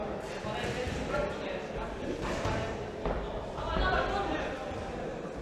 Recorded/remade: recorded